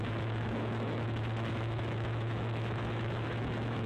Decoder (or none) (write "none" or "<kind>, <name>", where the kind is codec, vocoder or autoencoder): autoencoder, DAC-VAE